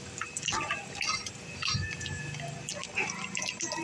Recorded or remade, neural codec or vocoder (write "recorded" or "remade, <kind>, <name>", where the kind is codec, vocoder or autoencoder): recorded